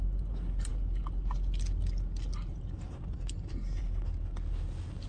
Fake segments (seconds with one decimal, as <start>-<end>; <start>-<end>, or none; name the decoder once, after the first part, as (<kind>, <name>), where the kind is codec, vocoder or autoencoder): none